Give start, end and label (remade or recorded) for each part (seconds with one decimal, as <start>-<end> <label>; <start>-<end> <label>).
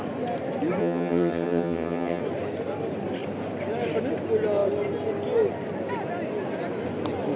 0.0-0.8 recorded; 0.8-2.2 remade; 2.2-7.4 recorded